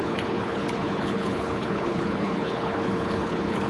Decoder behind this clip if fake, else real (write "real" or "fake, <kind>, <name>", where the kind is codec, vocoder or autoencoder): fake, codec, HILCodec